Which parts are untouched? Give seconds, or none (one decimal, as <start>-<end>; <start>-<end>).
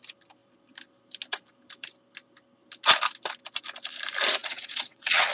0.0-4.4